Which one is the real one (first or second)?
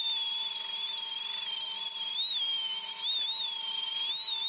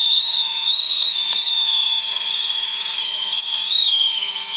first